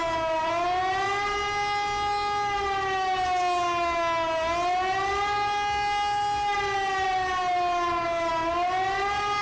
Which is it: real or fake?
real